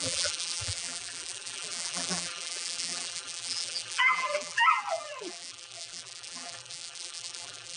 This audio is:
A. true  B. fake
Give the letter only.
B